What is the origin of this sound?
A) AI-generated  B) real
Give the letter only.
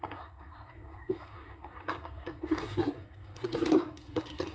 A